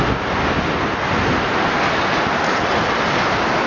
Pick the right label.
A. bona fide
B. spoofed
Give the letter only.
A